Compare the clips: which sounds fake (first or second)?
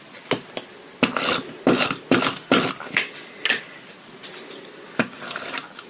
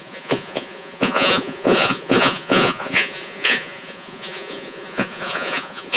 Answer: second